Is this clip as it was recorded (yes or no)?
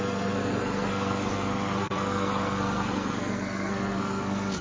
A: no